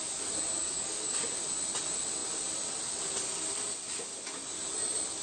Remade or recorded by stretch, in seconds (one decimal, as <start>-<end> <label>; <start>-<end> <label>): 0.0-0.6 recorded; 0.6-1.2 remade; 1.2-5.2 recorded